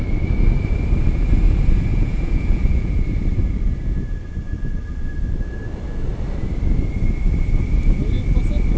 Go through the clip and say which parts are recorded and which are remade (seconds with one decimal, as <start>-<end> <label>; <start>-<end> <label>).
0.0-1.9 recorded; 1.9-3.0 remade; 3.0-8.8 recorded